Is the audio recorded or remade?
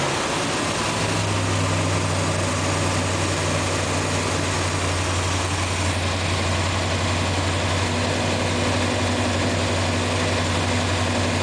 recorded